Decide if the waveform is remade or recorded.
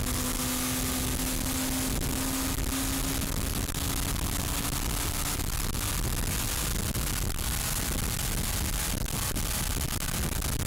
recorded